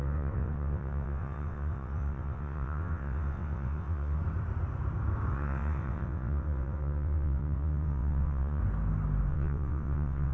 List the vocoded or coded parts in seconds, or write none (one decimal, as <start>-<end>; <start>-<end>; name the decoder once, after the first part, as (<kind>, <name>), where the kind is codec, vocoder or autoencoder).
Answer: 0.0-4.2 (vocoder, WaveNeXt); 5.3-8.6; 9.3-10.3